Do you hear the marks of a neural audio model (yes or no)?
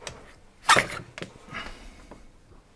no